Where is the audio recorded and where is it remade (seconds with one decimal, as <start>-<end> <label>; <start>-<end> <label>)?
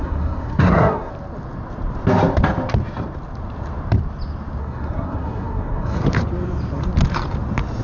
0.0-1.1 remade; 1.1-4.6 recorded; 4.6-6.0 remade; 6.0-7.8 recorded